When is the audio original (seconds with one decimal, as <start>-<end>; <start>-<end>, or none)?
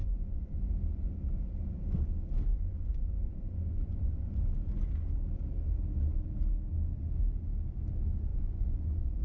0.6-2.5; 4.4-8.3